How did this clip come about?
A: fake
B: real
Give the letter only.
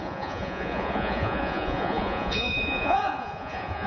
A